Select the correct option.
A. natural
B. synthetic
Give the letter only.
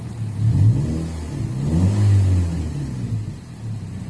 A